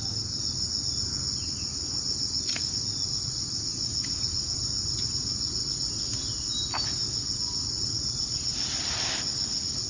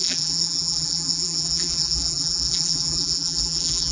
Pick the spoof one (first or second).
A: second